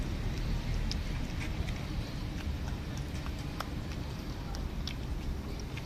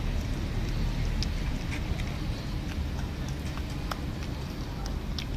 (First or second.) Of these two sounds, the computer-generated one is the first